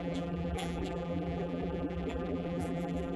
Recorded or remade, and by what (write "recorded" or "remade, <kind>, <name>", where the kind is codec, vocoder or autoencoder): remade, vocoder, BigVGAN v2